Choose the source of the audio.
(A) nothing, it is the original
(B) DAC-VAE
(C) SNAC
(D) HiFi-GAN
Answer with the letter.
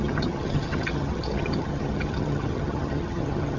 D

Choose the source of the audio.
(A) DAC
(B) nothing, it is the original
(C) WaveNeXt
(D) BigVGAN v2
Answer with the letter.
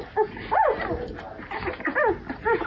B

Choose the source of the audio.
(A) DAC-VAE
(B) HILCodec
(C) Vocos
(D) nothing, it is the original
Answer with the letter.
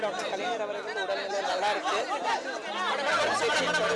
D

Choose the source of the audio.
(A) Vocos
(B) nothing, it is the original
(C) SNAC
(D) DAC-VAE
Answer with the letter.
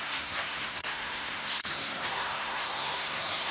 C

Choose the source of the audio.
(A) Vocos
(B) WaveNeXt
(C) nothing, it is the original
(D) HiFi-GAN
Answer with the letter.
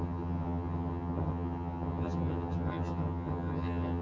D